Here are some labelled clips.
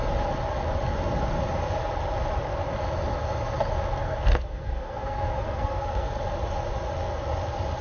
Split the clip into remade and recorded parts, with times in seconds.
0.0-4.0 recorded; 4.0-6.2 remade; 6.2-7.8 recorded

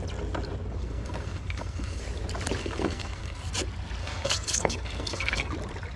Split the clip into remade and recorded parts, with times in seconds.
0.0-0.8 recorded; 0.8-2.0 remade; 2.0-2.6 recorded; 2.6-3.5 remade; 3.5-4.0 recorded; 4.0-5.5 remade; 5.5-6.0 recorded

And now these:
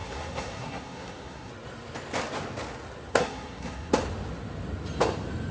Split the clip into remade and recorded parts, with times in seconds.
0.0-1.5 remade; 1.5-3.1 recorded; 3.1-3.9 remade; 3.9-5.5 recorded

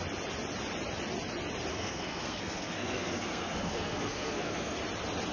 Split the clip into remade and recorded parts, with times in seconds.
0.0-1.7 recorded; 1.7-4.8 remade; 4.8-5.3 recorded

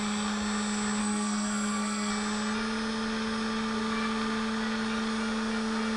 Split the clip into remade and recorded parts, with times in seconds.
0.0-1.0 recorded; 1.0-2.1 remade; 2.1-6.0 recorded

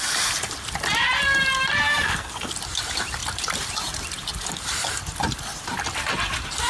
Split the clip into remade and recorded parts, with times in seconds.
0.0-1.8 recorded; 1.8-2.5 remade; 2.5-6.7 recorded

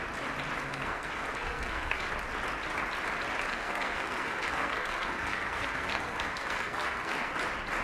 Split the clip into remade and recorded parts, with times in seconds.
0.0-0.7 recorded; 0.7-2.1 remade; 2.1-3.5 recorded; 3.5-7.3 remade; 7.3-7.8 recorded